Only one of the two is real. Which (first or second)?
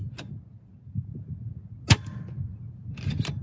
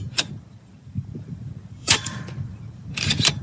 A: first